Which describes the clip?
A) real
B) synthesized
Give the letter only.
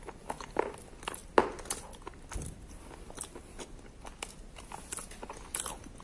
A